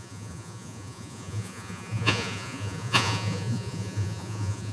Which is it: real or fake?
fake